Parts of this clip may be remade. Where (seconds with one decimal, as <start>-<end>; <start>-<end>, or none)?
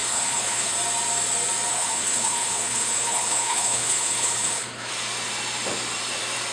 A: 0.0-0.7; 1.7-4.9